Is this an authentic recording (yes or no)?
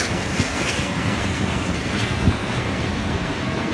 no